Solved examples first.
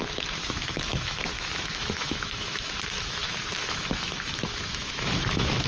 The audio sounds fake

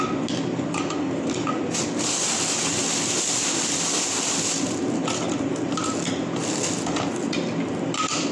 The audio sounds real